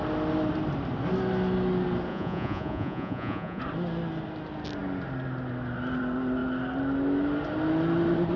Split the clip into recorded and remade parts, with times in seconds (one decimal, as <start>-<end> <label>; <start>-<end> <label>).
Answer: 0.0-2.1 recorded; 2.1-3.6 remade; 3.6-8.4 recorded